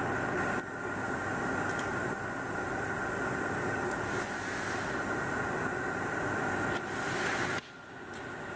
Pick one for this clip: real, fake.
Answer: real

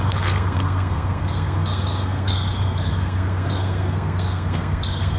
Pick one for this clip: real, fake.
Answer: fake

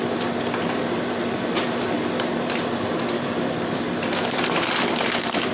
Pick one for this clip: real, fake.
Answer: fake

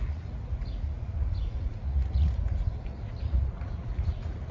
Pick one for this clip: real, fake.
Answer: fake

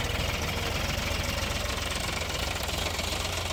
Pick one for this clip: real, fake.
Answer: real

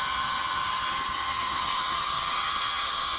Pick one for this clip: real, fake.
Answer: fake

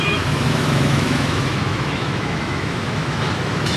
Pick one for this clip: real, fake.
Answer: fake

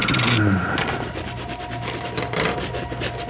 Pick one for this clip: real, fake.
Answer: real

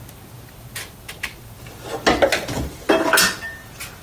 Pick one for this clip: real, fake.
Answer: real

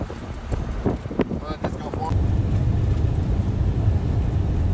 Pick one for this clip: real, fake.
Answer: real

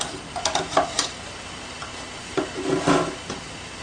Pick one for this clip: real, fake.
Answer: fake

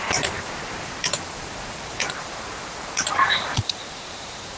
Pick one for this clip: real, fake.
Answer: fake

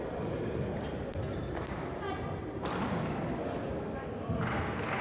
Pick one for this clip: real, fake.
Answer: real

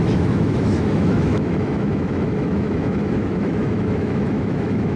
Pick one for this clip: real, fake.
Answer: fake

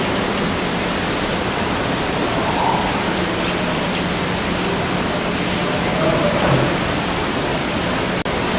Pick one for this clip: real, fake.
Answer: real